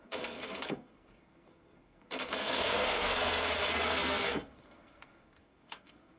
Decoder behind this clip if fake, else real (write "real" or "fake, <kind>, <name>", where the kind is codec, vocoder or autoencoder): fake, codec, SNAC